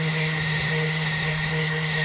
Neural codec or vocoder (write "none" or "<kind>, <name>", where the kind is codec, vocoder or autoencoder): codec, SNAC